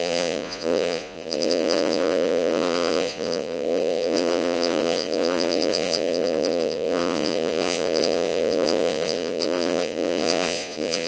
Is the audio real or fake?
fake